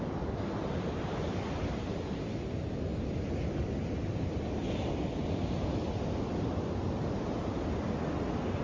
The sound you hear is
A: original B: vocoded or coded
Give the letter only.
A